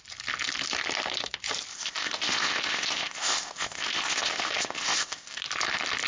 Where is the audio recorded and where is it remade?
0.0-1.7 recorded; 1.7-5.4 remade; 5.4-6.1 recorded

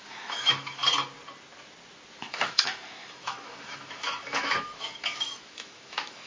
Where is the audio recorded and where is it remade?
0.0-0.8 remade; 0.8-2.2 recorded; 2.2-6.3 remade

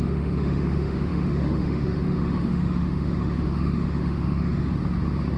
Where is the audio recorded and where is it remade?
0.0-4.8 remade; 4.8-5.4 recorded

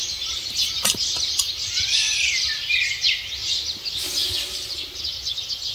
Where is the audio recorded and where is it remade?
0.0-5.7 recorded

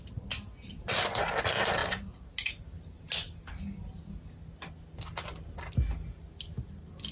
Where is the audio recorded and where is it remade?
0.0-7.1 recorded